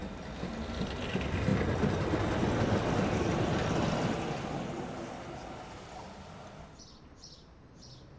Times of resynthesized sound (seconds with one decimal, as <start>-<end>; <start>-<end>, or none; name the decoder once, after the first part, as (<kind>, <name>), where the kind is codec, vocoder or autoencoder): none